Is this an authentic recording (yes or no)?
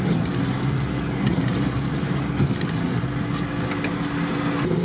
yes